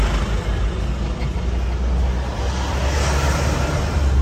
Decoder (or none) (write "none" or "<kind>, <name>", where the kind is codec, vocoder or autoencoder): none